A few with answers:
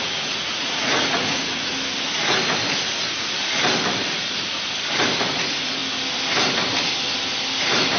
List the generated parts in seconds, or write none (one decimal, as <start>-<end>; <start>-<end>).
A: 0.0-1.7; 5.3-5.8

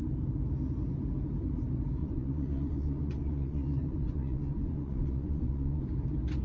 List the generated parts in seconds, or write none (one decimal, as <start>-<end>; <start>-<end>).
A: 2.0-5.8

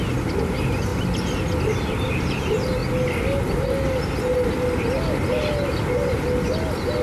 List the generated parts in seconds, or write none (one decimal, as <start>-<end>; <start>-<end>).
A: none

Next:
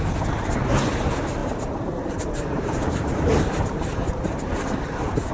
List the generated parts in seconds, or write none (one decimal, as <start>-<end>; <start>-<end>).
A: none

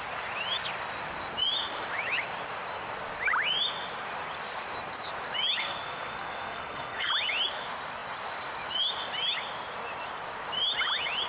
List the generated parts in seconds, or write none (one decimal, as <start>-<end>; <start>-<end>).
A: 5.6-7.1

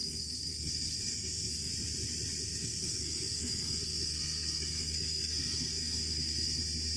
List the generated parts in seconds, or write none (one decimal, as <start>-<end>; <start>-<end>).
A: 0.0-1.7; 2.4-6.6